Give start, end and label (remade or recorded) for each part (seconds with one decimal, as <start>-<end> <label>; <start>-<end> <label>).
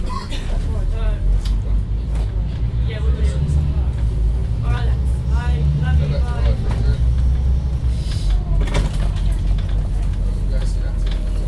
0.0-11.5 recorded